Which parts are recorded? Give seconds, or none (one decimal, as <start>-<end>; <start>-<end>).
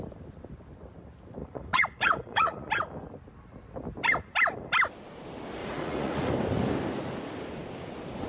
0.0-1.4; 2.7-5.6; 6.3-8.3